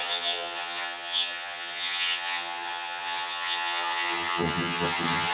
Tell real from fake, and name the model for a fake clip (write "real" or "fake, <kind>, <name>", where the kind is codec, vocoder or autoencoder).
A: fake, vocoder, HiFi-GAN